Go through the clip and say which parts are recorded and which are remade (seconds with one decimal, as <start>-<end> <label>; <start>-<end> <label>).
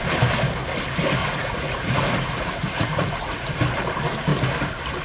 0.0-1.2 recorded; 1.2-3.5 remade; 3.5-5.0 recorded